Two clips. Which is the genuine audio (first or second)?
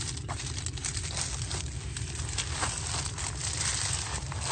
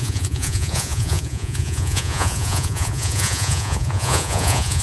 first